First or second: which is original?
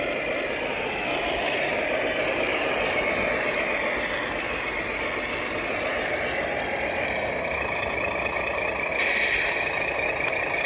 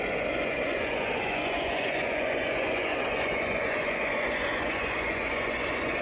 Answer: first